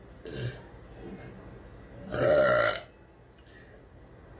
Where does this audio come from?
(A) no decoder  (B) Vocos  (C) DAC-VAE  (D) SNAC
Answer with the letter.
A